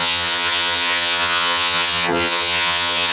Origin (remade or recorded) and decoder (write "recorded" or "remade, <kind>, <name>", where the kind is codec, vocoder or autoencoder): remade, vocoder, HiFi-GAN